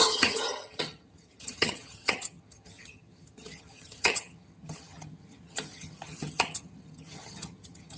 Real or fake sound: fake